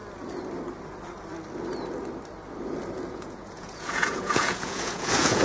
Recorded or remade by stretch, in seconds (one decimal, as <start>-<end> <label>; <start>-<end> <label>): 0.0-3.1 recorded; 3.1-5.4 remade